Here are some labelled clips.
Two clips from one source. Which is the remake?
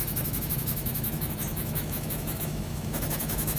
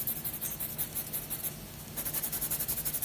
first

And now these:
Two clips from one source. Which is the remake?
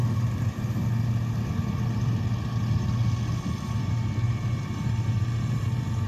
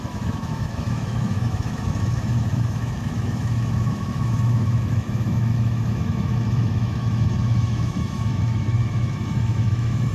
second